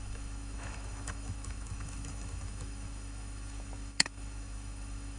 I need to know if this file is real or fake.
fake